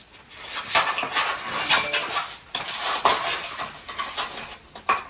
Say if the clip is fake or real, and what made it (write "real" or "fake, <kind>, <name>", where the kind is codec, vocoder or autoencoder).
real